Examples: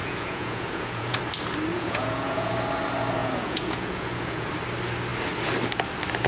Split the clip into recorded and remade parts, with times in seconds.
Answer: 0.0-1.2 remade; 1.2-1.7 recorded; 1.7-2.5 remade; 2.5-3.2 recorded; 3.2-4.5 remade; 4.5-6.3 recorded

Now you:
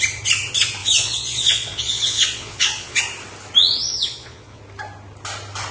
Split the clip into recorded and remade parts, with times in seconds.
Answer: 0.0-0.8 recorded; 0.8-3.0 remade; 3.0-3.6 recorded; 3.6-4.6 remade; 4.6-5.7 recorded